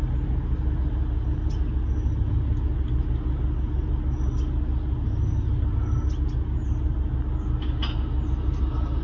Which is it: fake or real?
real